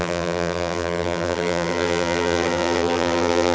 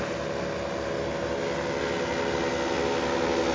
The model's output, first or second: first